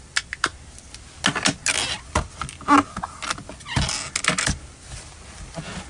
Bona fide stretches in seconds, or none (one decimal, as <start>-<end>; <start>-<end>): 0.0-5.9